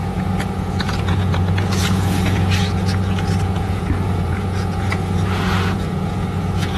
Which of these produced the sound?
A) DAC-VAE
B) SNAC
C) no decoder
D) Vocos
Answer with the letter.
D